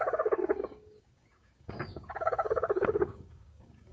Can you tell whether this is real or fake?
fake